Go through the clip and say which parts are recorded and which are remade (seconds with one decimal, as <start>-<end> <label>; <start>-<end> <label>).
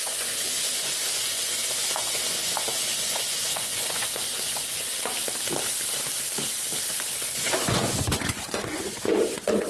0.0-4.9 remade; 4.9-6.9 recorded; 6.9-9.7 remade